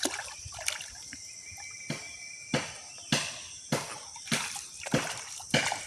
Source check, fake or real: real